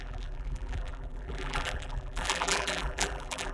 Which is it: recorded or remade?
remade